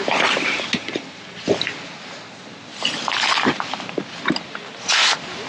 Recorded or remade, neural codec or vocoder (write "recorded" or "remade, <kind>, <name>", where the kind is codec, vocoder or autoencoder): recorded